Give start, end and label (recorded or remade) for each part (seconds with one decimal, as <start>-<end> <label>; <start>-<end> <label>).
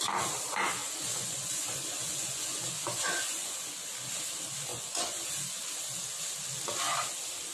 0.0-0.8 recorded; 0.8-3.7 remade; 3.7-4.7 recorded; 4.7-5.3 remade; 5.3-7.5 recorded